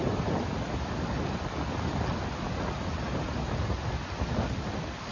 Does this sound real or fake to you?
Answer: real